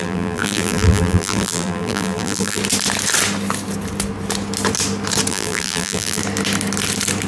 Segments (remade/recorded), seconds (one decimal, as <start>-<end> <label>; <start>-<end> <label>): 0.0-2.6 remade; 2.6-5.3 recorded; 5.3-6.2 remade; 6.2-7.3 recorded